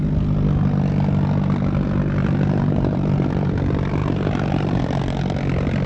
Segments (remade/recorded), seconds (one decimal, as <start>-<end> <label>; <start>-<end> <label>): 0.0-2.2 recorded; 2.2-3.5 remade; 3.5-4.0 recorded; 4.0-4.8 remade; 4.8-5.9 recorded